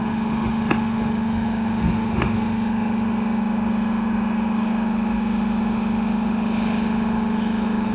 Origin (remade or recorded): remade